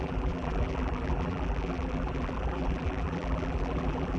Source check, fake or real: fake